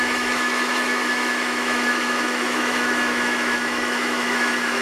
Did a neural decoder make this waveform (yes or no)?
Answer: yes